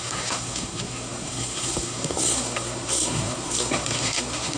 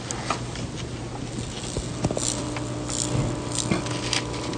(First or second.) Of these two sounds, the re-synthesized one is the first